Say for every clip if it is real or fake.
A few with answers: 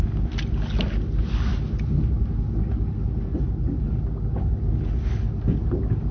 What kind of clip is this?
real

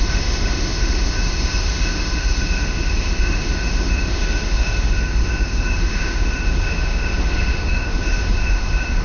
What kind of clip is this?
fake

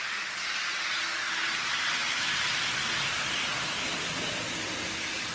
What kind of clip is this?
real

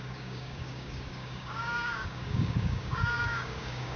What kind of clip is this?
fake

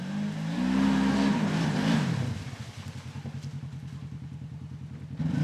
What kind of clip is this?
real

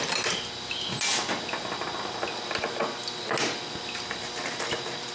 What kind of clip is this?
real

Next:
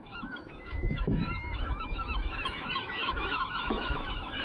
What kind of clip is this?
fake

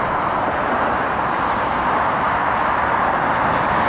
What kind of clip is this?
real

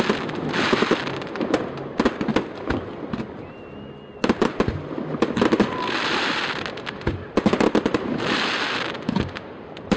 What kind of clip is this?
real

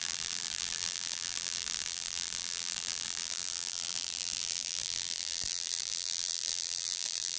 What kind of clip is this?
fake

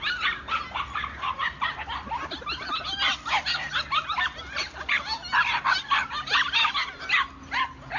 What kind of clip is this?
real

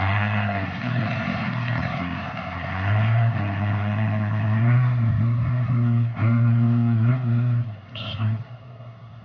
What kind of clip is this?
fake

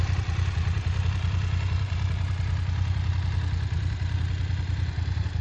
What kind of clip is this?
real